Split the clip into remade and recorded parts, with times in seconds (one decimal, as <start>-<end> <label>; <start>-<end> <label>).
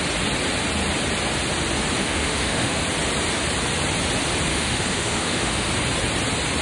0.0-2.0 recorded; 2.0-2.8 remade; 2.8-4.5 recorded; 4.5-5.7 remade; 5.7-6.6 recorded